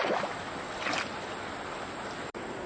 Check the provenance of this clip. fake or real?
real